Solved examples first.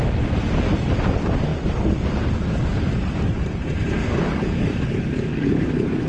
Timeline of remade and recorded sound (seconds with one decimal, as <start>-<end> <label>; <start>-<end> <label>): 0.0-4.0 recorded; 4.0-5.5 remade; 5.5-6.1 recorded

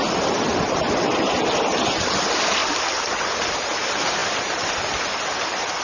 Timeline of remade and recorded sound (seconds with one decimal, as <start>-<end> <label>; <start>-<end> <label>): 0.0-5.8 recorded

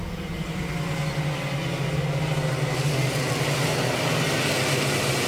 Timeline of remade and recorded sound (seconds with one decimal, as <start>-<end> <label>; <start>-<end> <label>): 0.0-5.3 recorded

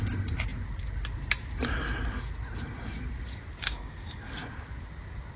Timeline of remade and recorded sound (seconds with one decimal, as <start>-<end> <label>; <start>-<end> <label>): 0.0-3.6 recorded; 3.6-4.3 remade; 4.3-5.4 recorded

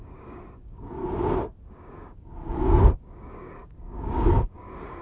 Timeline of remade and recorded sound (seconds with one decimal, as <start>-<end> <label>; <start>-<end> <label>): 0.0-1.0 remade; 1.0-1.7 recorded; 1.7-5.0 remade